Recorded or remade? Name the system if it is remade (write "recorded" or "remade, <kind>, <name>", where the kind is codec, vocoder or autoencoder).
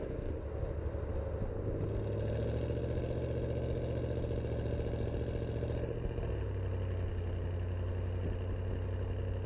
recorded